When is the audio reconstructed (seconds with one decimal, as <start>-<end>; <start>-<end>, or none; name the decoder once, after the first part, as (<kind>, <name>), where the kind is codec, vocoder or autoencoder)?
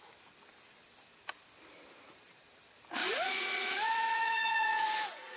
3.0-5.4 (vocoder, Vocos)